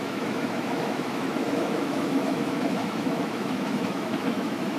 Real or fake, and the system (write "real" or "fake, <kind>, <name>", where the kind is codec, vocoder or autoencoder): fake, autoencoder, DAC-VAE